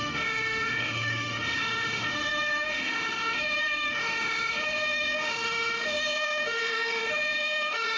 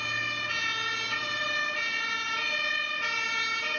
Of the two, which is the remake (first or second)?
first